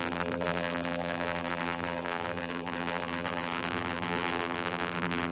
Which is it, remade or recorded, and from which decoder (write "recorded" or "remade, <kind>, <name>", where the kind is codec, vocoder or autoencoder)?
remade, vocoder, BigVGAN v2